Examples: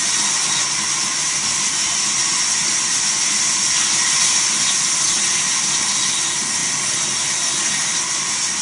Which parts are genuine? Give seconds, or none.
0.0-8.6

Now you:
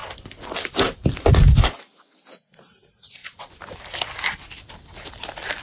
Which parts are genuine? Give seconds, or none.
0.0-5.6

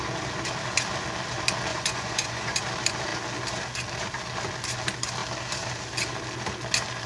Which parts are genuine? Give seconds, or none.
0.0-1.7; 2.6-7.1

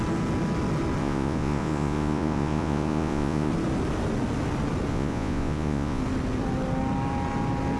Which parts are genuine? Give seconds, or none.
0.0-1.0; 3.5-4.9; 6.0-7.8

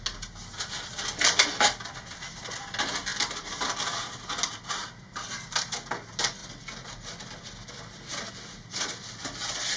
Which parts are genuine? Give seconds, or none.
0.0-9.8

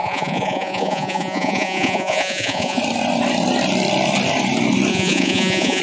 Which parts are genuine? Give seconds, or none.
2.8-4.9

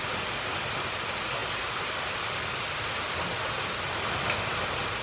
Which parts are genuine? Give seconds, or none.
0.0-5.0

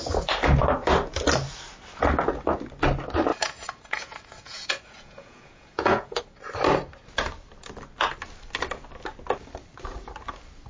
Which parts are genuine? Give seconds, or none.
0.0-3.3; 6.2-10.7